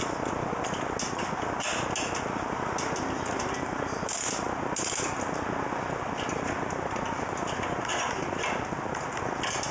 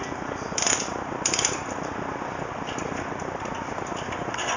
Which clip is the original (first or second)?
first